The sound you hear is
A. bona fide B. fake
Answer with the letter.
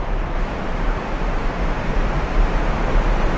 B